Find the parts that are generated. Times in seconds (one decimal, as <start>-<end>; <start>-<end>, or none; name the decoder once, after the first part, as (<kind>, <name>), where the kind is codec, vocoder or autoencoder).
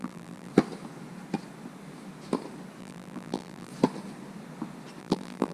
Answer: 0.0-0.5 (vocoder, BigVGAN v2); 2.8-3.7; 5.0-5.5